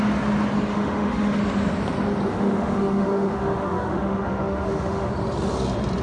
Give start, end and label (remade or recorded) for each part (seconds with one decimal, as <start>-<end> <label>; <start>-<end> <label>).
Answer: 0.0-0.7 recorded; 0.7-1.4 remade; 1.4-2.3 recorded; 2.3-5.1 remade; 5.1-6.0 recorded